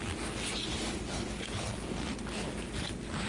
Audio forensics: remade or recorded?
recorded